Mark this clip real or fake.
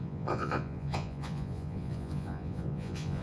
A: fake